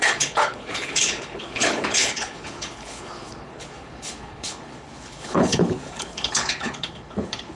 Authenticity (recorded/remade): remade